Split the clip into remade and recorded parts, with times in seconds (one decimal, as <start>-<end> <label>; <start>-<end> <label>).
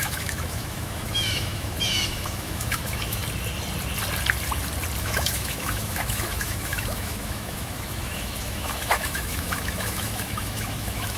0.0-3.2 remade; 3.2-5.0 recorded; 5.0-11.2 remade